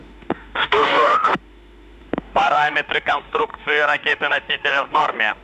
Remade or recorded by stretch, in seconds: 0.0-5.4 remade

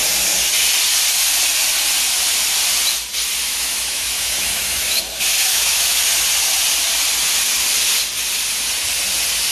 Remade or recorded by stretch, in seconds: 0.0-3.4 recorded; 3.4-5.0 remade; 5.0-5.5 recorded; 5.5-6.0 remade; 6.0-9.5 recorded

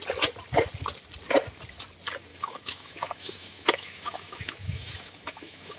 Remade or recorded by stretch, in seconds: 0.0-2.3 recorded; 2.3-5.8 remade